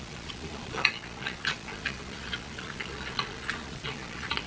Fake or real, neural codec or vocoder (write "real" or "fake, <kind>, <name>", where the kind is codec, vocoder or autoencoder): fake, vocoder, Vocos